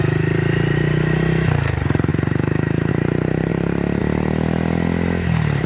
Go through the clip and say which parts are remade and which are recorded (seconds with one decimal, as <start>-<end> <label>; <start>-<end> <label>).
0.0-2.1 recorded; 2.1-2.9 remade; 2.9-5.7 recorded